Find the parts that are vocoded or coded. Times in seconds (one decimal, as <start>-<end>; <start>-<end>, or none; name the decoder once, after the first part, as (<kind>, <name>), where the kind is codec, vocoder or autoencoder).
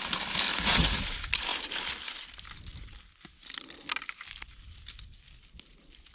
0.5-1.0 (vocoder, Vocos)